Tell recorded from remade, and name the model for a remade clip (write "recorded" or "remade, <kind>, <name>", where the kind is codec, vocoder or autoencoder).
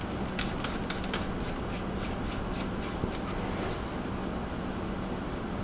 recorded